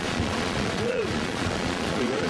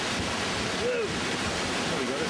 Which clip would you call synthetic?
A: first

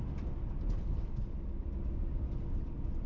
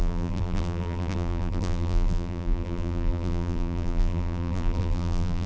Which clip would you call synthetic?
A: second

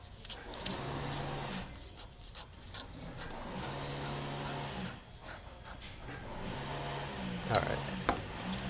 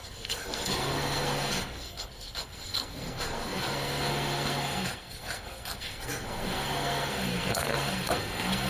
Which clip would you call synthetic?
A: second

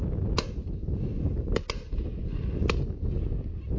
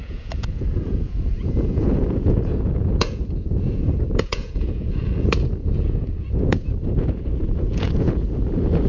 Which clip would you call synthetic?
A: second